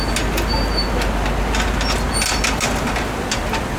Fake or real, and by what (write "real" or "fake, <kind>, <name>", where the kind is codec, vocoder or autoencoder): real